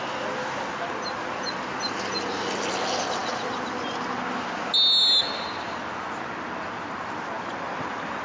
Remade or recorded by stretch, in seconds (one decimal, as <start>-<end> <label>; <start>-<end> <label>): 0.0-8.2 recorded